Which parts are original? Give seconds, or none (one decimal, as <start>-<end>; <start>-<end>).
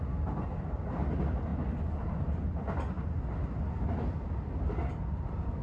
0.0-5.6